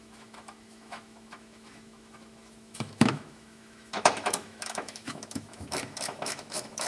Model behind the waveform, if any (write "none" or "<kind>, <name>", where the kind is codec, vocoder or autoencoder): autoencoder, DAC-VAE